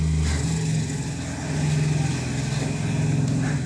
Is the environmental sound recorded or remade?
recorded